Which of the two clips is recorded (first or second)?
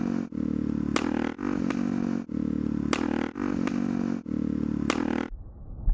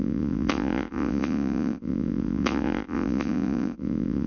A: first